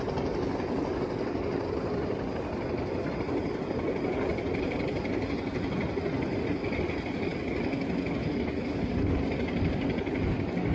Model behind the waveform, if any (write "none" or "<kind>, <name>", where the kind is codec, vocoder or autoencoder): none